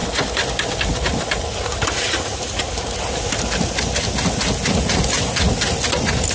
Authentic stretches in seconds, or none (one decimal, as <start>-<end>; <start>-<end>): 0.0-6.3